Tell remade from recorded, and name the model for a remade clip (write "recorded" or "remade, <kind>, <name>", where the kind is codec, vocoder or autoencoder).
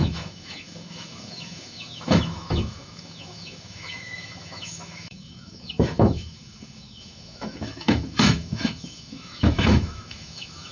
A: remade, autoencoder, DAC-VAE